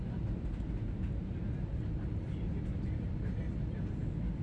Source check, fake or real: real